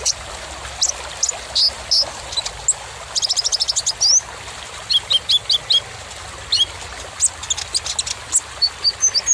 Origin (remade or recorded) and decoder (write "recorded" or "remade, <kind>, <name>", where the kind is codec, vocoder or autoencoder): recorded